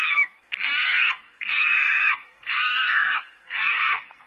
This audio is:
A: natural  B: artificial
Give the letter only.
B